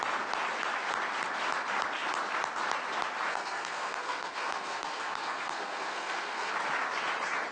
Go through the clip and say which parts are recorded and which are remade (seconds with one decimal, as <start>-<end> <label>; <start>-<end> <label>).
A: 0.0-3.3 recorded; 3.3-6.5 remade; 6.5-7.5 recorded